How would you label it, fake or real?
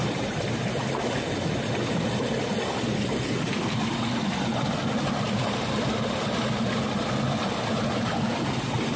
real